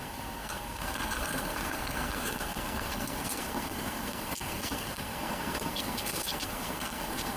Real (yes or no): no